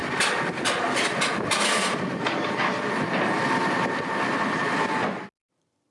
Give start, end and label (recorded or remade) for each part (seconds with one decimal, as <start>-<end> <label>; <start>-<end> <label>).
0.0-5.9 recorded